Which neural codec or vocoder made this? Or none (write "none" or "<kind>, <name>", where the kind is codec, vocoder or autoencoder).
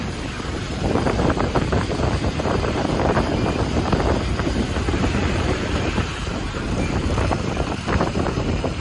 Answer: vocoder, BigVGAN v2